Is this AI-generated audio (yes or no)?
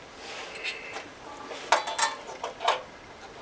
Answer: no